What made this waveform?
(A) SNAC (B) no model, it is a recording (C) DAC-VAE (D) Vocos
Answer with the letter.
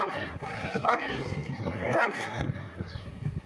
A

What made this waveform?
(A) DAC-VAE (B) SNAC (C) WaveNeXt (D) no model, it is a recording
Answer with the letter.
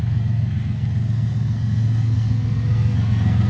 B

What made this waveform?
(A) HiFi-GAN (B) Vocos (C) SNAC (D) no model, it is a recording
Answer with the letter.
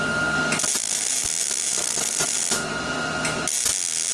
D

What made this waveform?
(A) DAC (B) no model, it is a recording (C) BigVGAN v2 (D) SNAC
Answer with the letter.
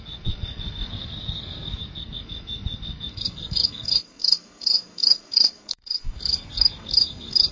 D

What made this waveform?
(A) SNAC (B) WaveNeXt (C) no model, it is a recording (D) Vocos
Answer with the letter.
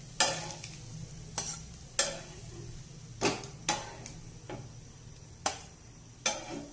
C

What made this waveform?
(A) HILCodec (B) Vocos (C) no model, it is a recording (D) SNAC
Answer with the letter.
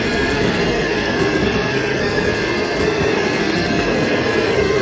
D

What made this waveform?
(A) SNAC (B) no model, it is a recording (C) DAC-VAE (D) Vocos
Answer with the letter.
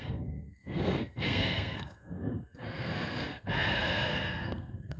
A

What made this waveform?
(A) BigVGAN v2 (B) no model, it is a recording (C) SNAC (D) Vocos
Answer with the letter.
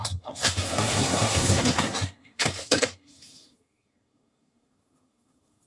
C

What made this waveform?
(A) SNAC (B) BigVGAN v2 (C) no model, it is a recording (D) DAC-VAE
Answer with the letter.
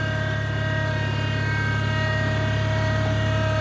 C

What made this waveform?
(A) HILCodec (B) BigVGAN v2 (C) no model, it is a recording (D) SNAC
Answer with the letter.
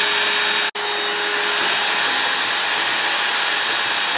C